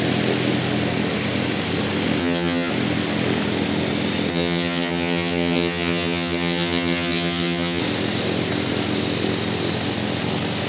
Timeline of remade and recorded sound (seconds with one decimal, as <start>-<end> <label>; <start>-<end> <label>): 0.0-2.2 recorded; 2.2-2.7 remade; 2.7-4.3 recorded; 4.3-7.8 remade; 7.8-10.7 recorded

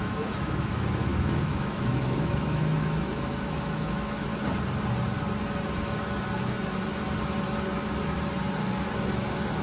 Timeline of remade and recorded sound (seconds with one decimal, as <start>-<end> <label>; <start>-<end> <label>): 0.0-4.3 remade; 4.3-9.6 recorded

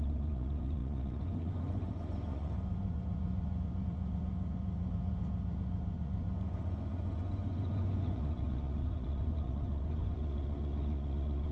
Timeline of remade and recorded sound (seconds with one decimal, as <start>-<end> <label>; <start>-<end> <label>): 0.0-11.5 remade

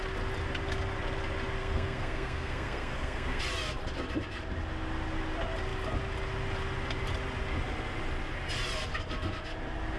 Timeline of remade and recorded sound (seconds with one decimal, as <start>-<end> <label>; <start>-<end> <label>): 0.0-1.6 recorded; 1.6-3.4 remade; 3.4-10.0 recorded